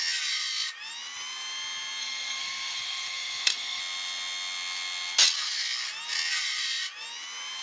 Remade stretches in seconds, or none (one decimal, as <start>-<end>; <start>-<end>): 2.0-3.8